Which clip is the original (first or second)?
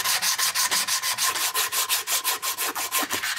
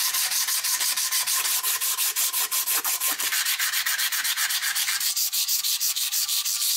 first